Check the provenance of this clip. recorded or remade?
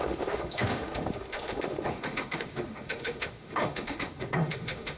remade